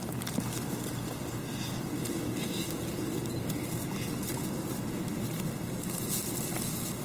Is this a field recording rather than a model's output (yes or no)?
yes